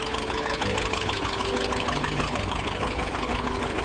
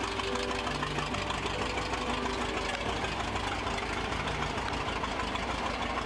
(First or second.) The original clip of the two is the second